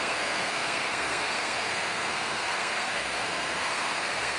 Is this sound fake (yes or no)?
yes